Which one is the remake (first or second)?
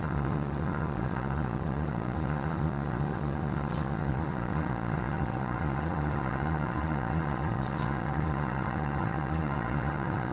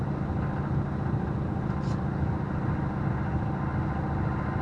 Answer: first